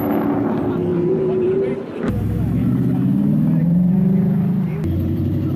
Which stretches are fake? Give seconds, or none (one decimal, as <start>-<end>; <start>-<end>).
0.9-2.1; 3.6-5.6